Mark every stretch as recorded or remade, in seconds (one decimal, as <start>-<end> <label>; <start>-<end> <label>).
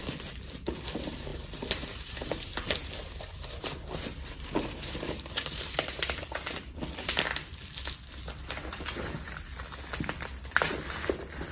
0.0-1.3 recorded; 1.3-6.3 remade; 6.3-11.5 recorded